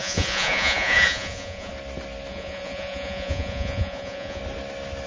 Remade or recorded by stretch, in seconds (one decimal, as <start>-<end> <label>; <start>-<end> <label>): 0.0-1.7 remade; 1.7-2.3 recorded; 2.3-4.4 remade; 4.4-5.1 recorded